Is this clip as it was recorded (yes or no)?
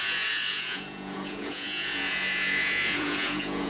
no